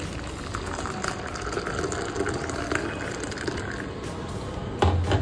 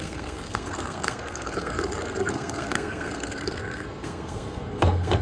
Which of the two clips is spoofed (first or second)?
second